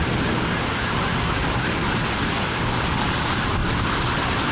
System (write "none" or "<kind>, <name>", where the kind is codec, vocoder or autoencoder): none